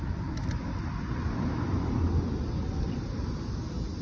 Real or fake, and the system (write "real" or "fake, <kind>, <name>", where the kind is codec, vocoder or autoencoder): real